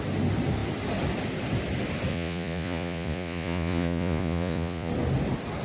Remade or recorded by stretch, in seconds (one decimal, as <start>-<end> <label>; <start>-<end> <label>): 0.0-2.1 recorded; 2.1-4.9 remade; 4.9-5.6 recorded